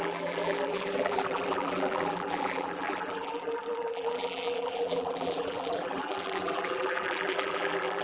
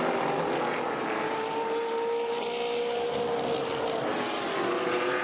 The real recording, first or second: second